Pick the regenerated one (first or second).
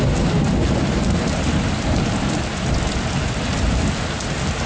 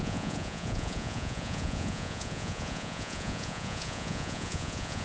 second